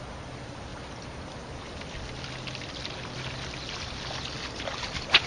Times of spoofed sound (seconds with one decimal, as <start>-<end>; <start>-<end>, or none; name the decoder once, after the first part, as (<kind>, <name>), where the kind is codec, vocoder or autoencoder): none